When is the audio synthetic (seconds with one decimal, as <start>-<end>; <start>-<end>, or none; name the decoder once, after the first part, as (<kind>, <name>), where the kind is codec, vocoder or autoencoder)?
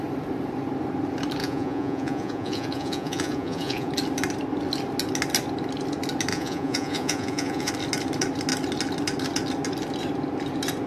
1.4-3.9 (vocoder, Vocos); 6.3-7.7